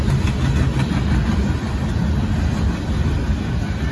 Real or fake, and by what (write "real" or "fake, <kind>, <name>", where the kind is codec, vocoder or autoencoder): real